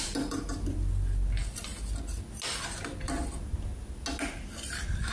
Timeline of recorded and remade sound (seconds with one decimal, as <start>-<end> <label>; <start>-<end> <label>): 0.0-5.1 recorded